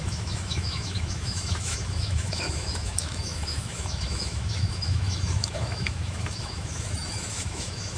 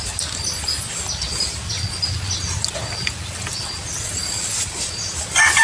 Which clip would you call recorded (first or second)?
second